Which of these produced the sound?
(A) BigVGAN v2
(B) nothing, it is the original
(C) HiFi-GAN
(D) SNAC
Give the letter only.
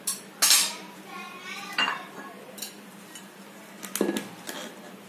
B